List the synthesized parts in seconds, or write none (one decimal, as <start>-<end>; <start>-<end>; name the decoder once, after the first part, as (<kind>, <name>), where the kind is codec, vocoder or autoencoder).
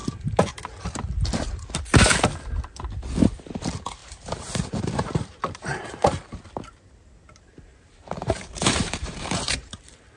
4.0-6.4 (vocoder, BigVGAN v2); 7.7-10.2